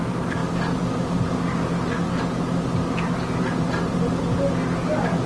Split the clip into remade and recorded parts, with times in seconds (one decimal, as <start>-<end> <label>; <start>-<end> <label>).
0.0-5.3 recorded